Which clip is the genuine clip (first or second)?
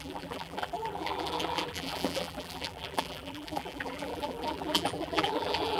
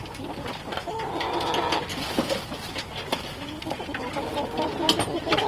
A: second